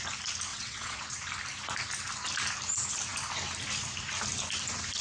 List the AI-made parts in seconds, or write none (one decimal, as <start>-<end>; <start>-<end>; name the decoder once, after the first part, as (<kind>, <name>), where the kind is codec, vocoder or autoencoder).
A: 0.5-1.0 (vocoder, WaveNeXt)